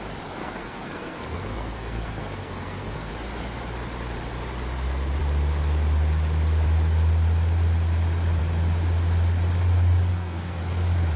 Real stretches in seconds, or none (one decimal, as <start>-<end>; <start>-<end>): 0.0-0.4; 3.1-10.1; 10.6-11.2